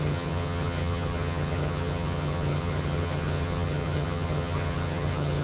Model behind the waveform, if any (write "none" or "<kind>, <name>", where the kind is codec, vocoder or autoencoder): vocoder, HiFi-GAN